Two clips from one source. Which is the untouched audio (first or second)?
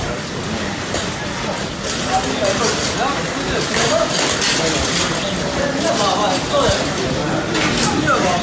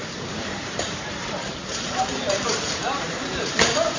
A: first